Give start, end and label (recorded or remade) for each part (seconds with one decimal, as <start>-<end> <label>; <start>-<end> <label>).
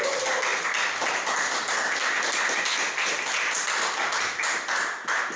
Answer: 0.0-5.4 recorded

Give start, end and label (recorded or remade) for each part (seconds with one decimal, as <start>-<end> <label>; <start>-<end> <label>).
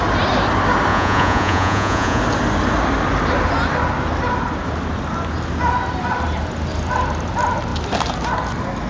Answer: 0.0-0.9 recorded; 0.9-2.2 remade; 2.2-8.9 recorded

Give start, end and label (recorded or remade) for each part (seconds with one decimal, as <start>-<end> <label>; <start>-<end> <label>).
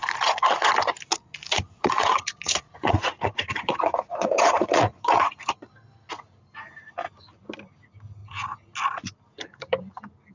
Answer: 0.0-0.7 remade; 0.7-1.1 recorded; 1.1-5.3 remade; 5.3-8.2 recorded; 8.2-8.7 remade; 8.7-10.3 recorded